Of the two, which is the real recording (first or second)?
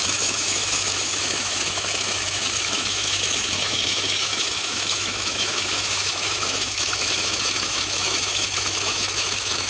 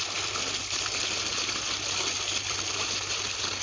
second